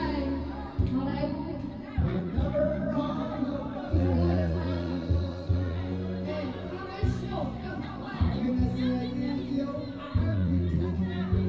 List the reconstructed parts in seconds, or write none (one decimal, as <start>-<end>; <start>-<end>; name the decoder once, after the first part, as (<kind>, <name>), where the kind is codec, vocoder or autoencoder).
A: 1.1-5.8 (vocoder, Vocos); 7.3-8.5; 10.3-11.0